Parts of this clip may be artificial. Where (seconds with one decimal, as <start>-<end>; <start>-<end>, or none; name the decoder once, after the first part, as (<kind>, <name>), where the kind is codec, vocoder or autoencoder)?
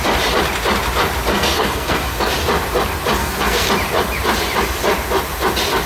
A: 1.3-2.3 (codec, SNAC); 3.2-3.7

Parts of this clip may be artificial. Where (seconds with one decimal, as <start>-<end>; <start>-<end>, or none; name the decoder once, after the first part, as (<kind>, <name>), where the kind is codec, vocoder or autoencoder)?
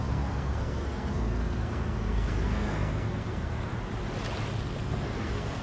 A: 0.0-3.7 (codec, SNAC); 4.8-5.6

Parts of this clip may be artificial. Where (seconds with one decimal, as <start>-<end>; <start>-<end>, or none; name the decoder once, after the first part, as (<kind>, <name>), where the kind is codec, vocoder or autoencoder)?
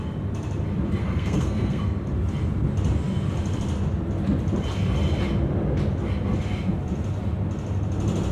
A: 1.0-1.8 (codec, SNAC)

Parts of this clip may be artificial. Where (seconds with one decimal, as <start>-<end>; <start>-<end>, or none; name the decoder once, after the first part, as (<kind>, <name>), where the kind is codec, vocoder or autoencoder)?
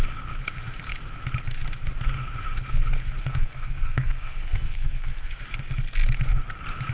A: 3.2-5.4 (codec, SNAC)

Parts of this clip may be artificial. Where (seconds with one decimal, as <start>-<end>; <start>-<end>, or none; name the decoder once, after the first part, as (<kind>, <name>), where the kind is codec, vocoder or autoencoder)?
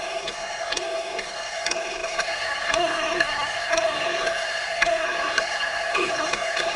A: 0.0-6.8 (codec, SNAC)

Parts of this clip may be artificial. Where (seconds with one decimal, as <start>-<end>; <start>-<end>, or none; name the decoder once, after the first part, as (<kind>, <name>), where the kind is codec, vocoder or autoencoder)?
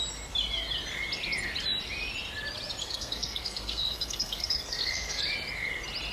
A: 2.8-5.2 (codec, SNAC)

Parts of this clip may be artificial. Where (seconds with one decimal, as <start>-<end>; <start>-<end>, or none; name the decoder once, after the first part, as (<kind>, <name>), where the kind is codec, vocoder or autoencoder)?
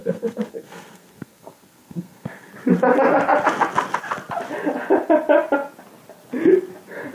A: 0.0-2.5 (codec, SNAC)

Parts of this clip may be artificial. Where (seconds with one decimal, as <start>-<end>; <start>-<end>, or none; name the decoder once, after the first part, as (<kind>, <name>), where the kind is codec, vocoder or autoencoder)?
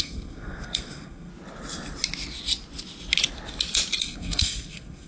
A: 0.0-1.3 (codec, SNAC); 4.0-5.1